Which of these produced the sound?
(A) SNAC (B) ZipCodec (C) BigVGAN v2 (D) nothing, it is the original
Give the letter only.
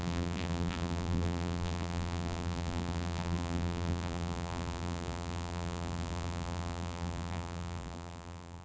C